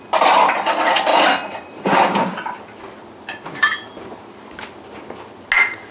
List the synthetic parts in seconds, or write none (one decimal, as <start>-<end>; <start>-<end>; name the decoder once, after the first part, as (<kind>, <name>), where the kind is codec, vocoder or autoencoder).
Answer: none